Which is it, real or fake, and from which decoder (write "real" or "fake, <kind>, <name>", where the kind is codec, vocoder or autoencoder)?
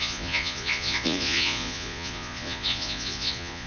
fake, vocoder, Vocos